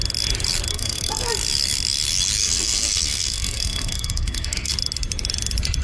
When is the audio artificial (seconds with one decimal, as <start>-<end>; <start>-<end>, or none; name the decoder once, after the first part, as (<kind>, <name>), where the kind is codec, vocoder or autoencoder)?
0.7-1.3 (codec, SNAC); 2.4-4.7